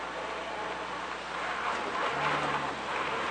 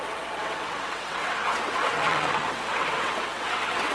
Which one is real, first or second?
first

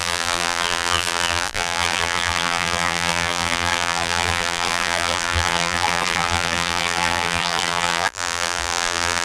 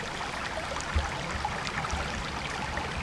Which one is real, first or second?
second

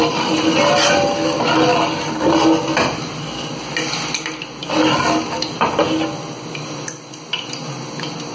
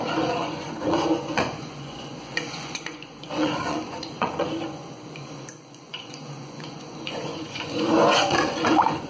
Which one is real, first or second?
first